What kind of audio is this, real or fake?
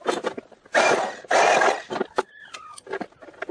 real